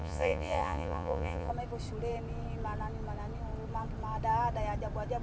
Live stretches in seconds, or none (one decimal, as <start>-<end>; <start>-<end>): 1.5-5.2